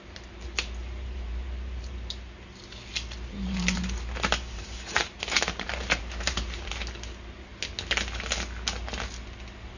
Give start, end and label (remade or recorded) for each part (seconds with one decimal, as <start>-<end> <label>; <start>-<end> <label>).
0.0-0.8 recorded; 0.8-2.6 remade; 2.6-3.3 recorded; 3.3-6.7 remade; 6.7-9.8 recorded